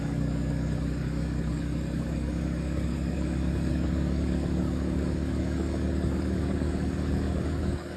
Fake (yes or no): yes